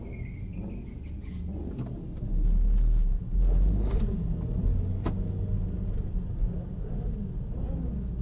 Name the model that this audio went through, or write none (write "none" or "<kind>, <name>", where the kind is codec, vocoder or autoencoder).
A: none